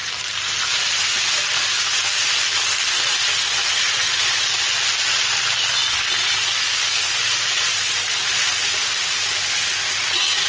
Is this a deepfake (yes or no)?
no